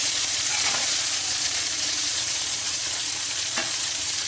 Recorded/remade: remade